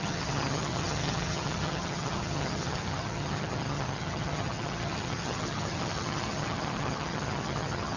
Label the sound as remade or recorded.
remade